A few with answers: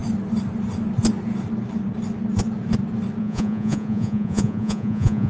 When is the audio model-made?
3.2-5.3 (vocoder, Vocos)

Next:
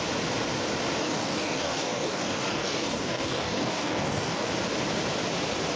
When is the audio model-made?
1.0-4.5 (codec, DAC)

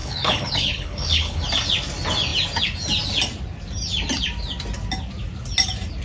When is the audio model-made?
0.0-1.4 (codec, HILCodec)

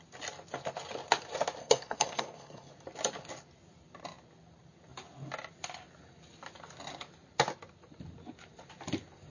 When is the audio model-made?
1.6-2.7 (codec, SNAC)

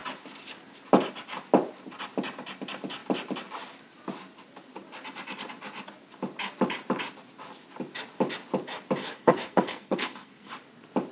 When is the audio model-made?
9.0-10.5 (codec, SNAC)

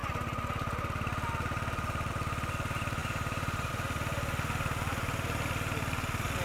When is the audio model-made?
3.0-3.7 (vocoder, BigVGAN v2)

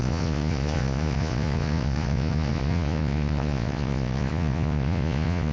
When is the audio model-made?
0.0-5.5 (vocoder, Vocos)